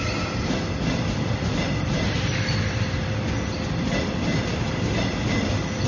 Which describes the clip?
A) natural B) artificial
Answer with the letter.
A